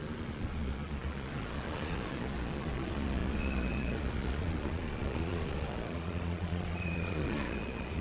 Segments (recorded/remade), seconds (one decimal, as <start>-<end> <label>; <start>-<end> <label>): 0.0-8.0 remade